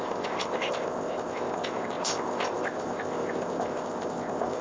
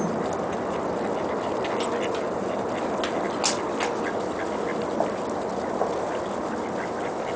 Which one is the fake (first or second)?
first